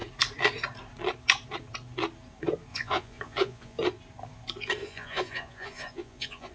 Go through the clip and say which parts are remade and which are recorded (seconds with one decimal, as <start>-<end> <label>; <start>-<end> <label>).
0.0-2.7 recorded; 2.7-3.8 remade; 3.8-4.8 recorded; 4.8-6.5 remade